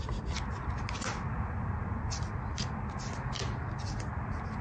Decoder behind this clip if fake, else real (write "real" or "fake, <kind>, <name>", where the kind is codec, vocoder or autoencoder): real